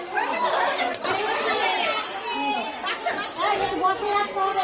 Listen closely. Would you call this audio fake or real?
real